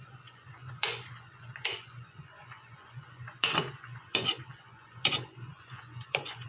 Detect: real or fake fake